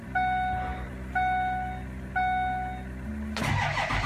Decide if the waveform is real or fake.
real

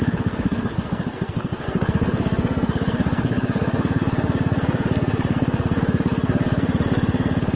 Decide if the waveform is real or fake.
fake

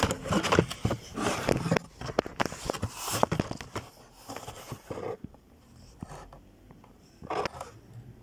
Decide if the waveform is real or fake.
real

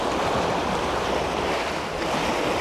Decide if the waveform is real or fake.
real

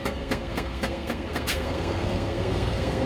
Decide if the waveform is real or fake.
fake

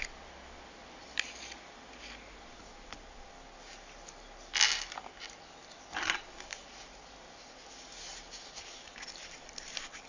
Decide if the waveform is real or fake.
real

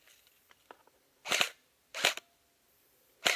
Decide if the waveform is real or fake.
real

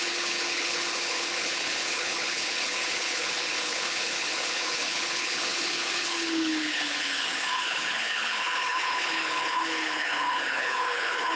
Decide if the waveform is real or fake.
fake